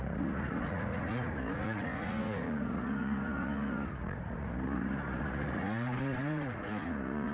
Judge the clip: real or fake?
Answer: fake